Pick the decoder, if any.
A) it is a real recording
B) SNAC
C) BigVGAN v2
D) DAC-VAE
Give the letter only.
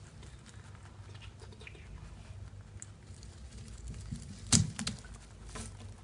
A